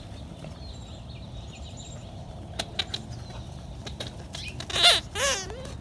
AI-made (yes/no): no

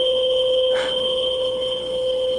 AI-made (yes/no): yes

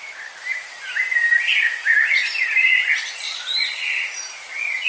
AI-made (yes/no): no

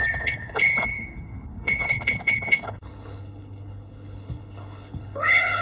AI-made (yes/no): yes